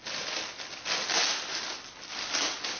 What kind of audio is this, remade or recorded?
recorded